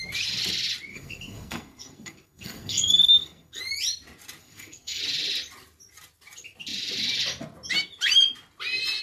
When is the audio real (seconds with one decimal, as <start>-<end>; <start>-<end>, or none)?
0.0-0.9; 3.6-4.4; 5.0-9.0